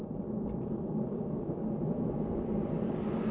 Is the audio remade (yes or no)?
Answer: no